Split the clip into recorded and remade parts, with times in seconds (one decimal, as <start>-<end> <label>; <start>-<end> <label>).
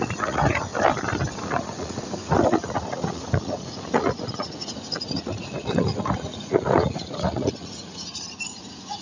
0.0-0.7 remade; 0.7-1.4 recorded; 1.4-9.0 remade